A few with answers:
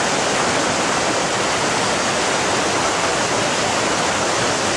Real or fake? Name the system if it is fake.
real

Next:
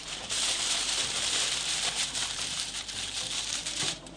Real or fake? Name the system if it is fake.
fake, vocoder, BigVGAN v2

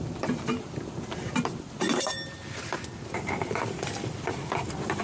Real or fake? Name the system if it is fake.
fake, vocoder, BigVGAN v2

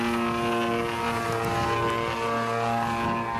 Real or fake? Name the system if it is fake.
real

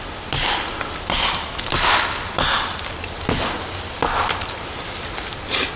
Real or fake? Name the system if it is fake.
fake, vocoder, BigVGAN v2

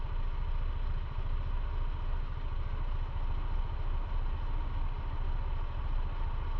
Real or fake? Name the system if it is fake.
real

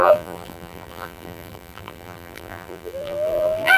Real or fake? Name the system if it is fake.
fake, vocoder, BigVGAN v2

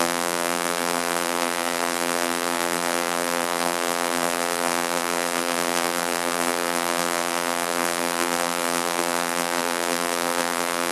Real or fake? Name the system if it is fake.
fake, vocoder, BigVGAN v2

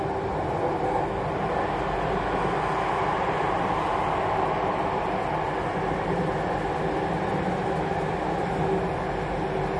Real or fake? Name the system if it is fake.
real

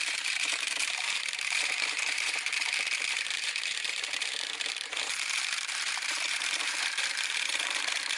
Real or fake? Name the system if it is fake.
fake, vocoder, BigVGAN v2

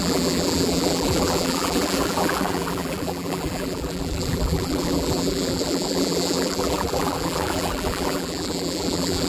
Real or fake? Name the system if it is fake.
fake, vocoder, BigVGAN v2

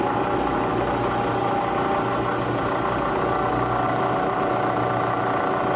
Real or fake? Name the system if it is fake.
real